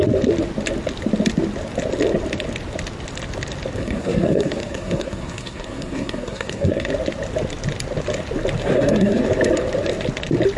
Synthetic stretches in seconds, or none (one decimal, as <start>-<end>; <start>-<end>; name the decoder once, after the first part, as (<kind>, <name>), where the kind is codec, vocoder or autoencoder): 3.8-6.9 (codec, SNAC); 8.6-9.2